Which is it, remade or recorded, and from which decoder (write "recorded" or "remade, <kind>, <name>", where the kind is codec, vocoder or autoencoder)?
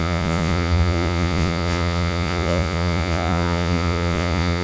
remade, vocoder, Vocos